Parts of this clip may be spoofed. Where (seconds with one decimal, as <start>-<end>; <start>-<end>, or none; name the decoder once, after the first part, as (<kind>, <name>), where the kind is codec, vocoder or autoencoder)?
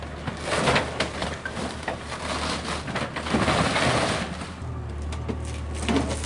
1.2-2.1 (vocoder, BigVGAN v2)